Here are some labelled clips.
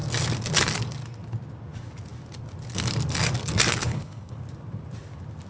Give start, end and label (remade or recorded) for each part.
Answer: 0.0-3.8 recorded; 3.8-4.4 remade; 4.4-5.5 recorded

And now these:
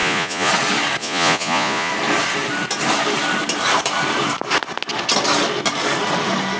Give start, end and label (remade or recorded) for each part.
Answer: 0.0-0.5 remade; 0.5-1.0 recorded; 1.0-1.9 remade; 1.9-6.6 recorded

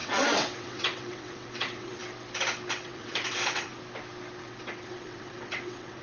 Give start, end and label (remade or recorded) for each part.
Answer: 0.0-2.0 remade; 2.0-2.7 recorded; 2.7-3.8 remade; 3.8-4.4 recorded; 4.4-6.0 remade